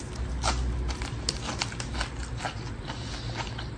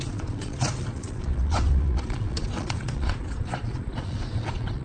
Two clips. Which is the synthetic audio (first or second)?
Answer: second